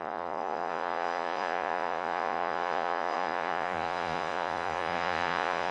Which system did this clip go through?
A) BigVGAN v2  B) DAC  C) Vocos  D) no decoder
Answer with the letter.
C